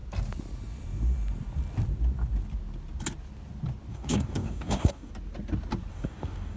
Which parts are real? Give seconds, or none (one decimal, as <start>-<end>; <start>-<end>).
0.0-3.9; 5.1-5.9